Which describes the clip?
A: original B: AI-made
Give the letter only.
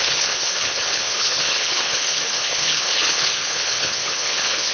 B